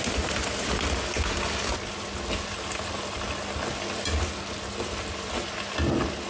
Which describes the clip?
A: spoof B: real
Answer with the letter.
B